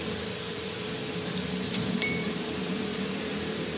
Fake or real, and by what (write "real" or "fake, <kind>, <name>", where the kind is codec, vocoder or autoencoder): fake, vocoder, BigVGAN v2